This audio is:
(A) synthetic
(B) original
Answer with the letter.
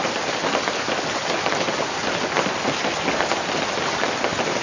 B